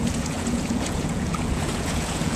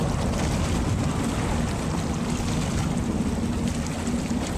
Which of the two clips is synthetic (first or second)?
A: first